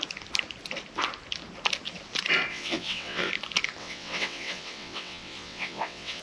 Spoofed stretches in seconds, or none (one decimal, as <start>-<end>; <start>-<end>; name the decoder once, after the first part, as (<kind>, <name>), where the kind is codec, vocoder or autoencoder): 2.5-3.3 (vocoder, WaveNeXt); 3.8-6.2